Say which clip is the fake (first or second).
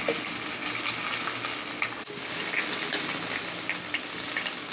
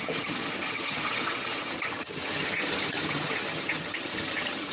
second